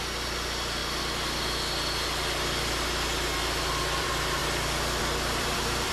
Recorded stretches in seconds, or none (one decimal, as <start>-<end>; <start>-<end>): 0.8-4.0; 4.4-5.0